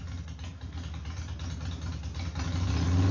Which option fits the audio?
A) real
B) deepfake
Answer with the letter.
A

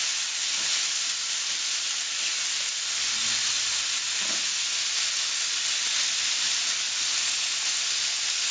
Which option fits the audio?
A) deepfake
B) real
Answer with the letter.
B